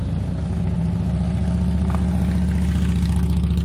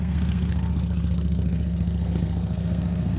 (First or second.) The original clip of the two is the first